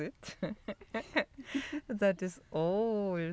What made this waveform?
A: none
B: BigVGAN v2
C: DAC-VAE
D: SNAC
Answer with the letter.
A